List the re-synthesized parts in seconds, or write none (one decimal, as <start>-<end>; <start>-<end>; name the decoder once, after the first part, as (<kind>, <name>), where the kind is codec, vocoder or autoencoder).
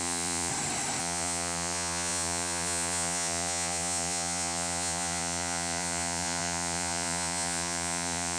0.0-0.5 (vocoder, Vocos); 1.0-8.4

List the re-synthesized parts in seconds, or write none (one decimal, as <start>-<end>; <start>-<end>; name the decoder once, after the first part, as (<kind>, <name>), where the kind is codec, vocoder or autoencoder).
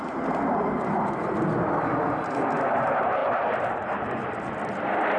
none